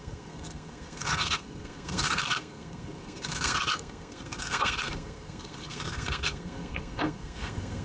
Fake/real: fake